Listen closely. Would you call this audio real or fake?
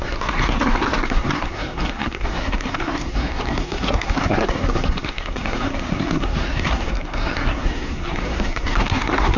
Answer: fake